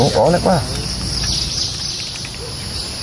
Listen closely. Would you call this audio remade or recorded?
recorded